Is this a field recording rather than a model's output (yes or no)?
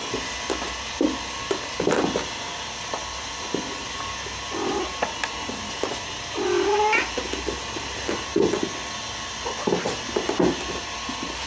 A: yes